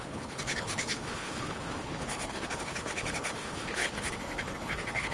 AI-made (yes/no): yes